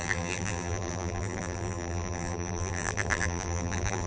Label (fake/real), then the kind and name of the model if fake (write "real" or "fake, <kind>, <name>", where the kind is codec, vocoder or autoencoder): fake, vocoder, BigVGAN v2